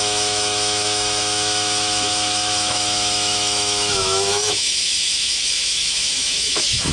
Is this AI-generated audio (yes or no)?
yes